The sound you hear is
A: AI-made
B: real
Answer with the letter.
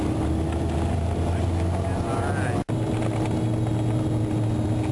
B